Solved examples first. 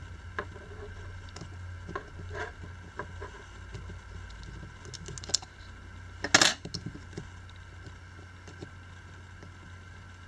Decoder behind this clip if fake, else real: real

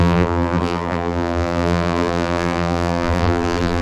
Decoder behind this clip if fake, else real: fake, vocoder, BigVGAN v2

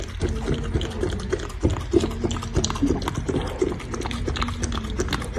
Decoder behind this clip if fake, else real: real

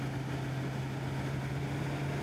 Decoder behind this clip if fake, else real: real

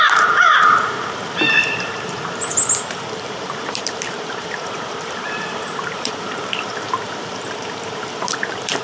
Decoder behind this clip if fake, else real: fake, vocoder, BigVGAN v2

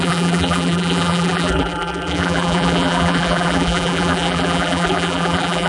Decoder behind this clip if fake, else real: fake, vocoder, BigVGAN v2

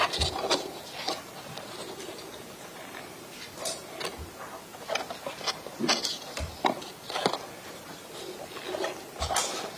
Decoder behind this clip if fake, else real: real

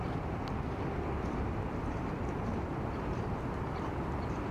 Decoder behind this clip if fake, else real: real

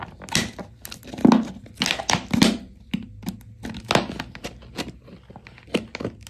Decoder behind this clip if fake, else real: real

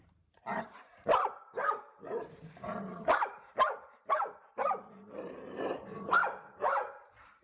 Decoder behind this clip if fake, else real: fake, vocoder, BigVGAN v2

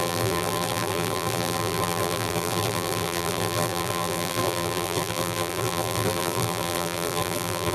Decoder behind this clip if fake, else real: fake, vocoder, BigVGAN v2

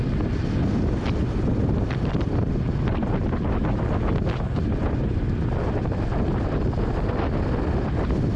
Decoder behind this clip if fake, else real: real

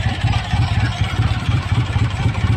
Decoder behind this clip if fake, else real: fake, vocoder, BigVGAN v2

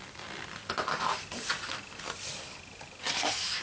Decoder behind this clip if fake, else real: fake, vocoder, BigVGAN v2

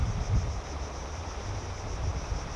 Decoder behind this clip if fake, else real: real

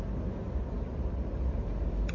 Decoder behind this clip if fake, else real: fake, vocoder, BigVGAN v2